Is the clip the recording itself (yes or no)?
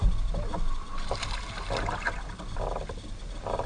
yes